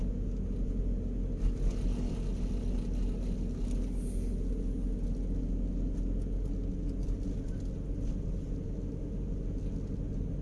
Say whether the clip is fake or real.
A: real